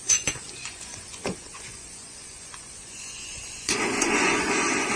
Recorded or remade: remade